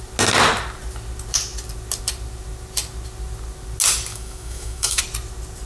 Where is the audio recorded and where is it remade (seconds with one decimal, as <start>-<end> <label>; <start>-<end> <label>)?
0.0-4.1 recorded; 4.1-5.0 remade; 5.0-5.7 recorded